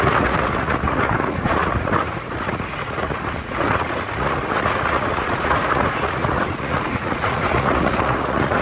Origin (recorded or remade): remade